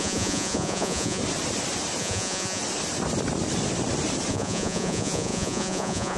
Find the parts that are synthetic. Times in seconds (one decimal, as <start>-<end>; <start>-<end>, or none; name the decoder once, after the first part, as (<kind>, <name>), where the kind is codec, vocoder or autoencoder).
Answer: 0.0-1.2 (vocoder, Vocos); 2.0-2.6; 4.3-6.2